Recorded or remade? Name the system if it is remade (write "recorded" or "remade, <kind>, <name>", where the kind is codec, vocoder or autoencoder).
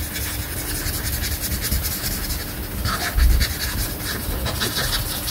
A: recorded